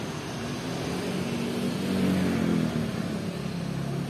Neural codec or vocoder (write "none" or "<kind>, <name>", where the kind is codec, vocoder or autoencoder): none